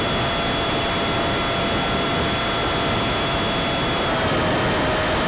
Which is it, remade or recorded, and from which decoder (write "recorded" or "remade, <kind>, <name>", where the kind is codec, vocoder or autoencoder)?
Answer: recorded